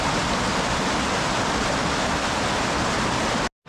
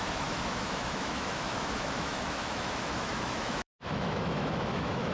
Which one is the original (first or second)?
first